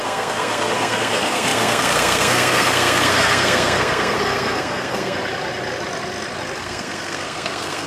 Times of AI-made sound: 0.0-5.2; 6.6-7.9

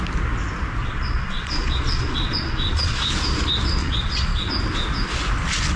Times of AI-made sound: 0.8-3.0; 3.8-4.5

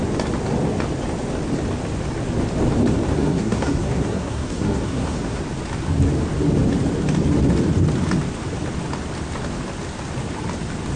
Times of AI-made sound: 3.1-5.4

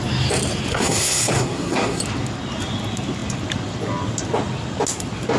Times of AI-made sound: 0.7-2.0

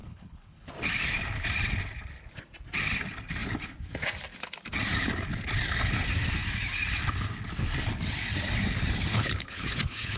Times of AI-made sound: 0.0-0.7; 9.1-10.2